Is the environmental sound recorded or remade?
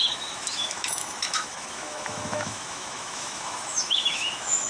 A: remade